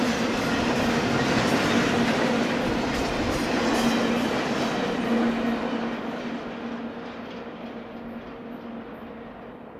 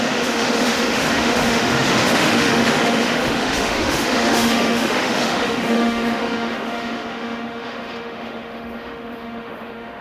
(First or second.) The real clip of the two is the first